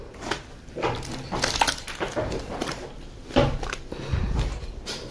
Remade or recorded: recorded